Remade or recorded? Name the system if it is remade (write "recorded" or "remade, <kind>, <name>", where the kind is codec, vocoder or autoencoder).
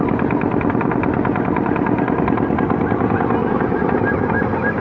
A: recorded